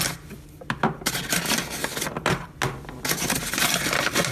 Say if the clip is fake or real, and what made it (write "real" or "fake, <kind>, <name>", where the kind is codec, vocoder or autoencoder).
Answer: real